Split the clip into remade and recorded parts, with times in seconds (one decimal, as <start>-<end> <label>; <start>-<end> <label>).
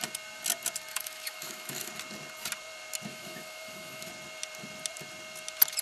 0.0-0.9 recorded; 0.9-1.9 remade; 1.9-3.1 recorded; 3.1-4.1 remade; 4.1-5.8 recorded